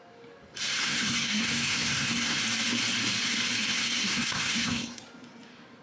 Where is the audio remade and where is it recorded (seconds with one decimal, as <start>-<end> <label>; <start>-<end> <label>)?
0.0-0.8 recorded; 0.8-2.4 remade; 2.4-3.7 recorded; 3.7-5.0 remade; 5.0-5.8 recorded